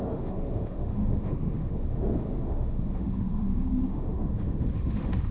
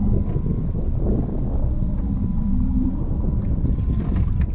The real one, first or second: second